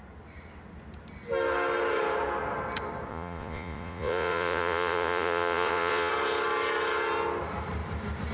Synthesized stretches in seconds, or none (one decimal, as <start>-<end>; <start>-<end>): 3.1-6.1

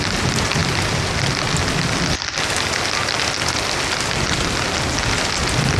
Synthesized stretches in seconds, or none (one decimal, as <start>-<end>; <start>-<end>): none

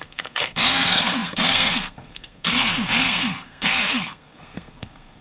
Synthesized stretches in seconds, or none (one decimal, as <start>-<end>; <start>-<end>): 0.0-5.2

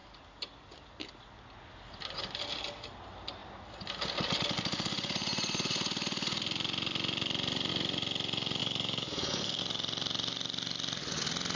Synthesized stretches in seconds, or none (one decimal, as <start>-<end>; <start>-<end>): 8.6-9.6

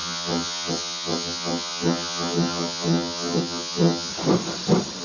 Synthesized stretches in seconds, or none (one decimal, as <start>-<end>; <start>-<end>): 0.0-4.1

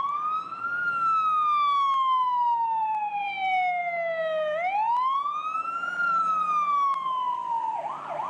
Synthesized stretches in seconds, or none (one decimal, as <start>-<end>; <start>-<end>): 2.8-3.3